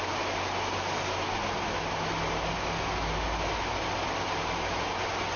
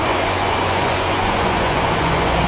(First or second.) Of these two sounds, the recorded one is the first